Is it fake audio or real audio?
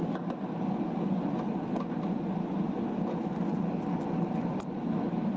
real